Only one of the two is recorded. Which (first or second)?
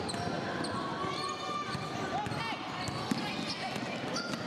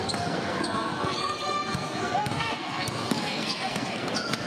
first